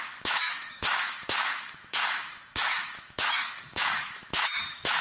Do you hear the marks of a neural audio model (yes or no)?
yes